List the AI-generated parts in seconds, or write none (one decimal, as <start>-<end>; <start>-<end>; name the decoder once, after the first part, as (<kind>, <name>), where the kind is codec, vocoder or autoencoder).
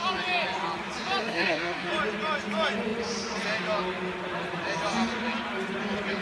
1.2-1.9 (codec, SNAC)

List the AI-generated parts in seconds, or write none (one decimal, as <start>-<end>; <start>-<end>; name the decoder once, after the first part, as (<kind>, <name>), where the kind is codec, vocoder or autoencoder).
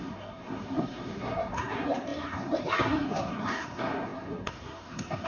0.0-5.3 (codec, SNAC)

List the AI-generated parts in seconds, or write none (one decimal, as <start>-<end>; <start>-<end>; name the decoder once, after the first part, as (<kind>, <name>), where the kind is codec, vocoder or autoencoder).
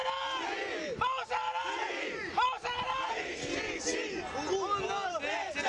3.1-3.5 (codec, SNAC)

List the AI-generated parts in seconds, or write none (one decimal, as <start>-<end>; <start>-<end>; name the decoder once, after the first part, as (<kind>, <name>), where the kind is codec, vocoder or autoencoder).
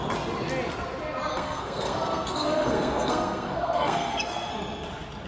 1.3-4.5 (codec, SNAC)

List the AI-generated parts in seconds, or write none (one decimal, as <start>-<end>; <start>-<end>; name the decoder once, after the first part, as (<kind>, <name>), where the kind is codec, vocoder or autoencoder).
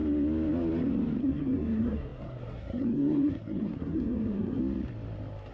1.2-4.6 (codec, SNAC)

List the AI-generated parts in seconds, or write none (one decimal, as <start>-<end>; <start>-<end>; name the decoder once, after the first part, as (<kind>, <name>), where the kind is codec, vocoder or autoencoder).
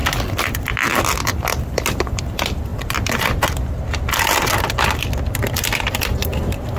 none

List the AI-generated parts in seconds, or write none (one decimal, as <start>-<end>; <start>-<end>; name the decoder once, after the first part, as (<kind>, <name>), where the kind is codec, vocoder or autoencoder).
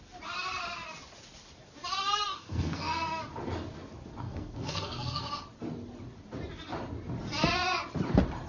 2.1-3.2 (codec, SNAC); 4.2-5.3